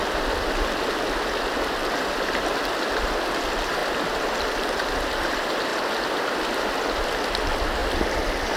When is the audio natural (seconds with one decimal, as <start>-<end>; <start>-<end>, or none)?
0.0-8.6